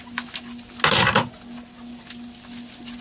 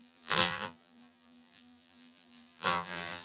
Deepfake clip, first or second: second